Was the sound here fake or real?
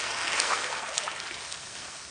fake